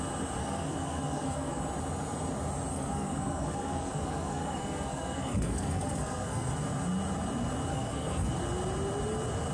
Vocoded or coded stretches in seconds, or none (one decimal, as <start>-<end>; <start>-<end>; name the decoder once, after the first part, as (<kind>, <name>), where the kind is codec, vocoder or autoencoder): 0.4-1.6 (codec, SNAC); 2.7-6.5; 7.7-8.3